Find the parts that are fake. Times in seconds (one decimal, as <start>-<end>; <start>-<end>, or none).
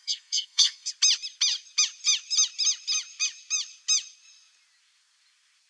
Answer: 0.0-0.9